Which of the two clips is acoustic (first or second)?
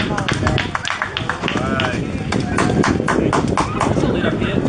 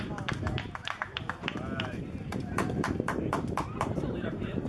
first